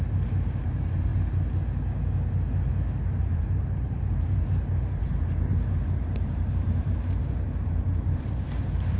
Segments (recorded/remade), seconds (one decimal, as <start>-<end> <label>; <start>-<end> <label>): 0.0-1.1 remade; 1.1-3.2 recorded; 3.2-9.0 remade